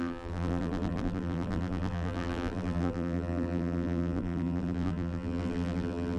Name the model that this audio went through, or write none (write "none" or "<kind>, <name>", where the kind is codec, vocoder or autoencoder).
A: vocoder, BigVGAN v2